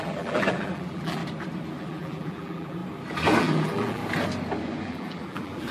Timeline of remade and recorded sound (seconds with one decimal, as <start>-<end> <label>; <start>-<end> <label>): 0.0-1.2 remade; 1.2-1.8 recorded; 1.8-2.8 remade; 2.8-3.4 recorded; 3.4-4.0 remade; 4.0-4.8 recorded; 4.8-5.7 remade